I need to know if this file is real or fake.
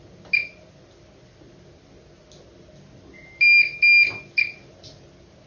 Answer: real